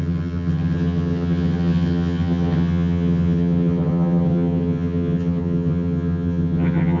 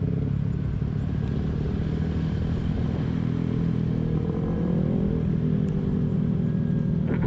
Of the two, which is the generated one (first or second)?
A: first